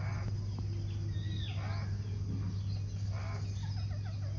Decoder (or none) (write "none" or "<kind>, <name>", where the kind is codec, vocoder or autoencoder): none